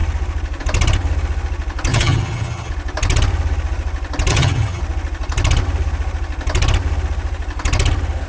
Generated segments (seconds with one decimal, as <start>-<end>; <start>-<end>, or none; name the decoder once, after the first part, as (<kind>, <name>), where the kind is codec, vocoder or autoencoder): 1.9-2.7 (vocoder, HiFi-GAN); 4.3-4.8